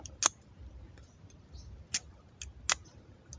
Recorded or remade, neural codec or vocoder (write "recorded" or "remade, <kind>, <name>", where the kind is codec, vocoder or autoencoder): recorded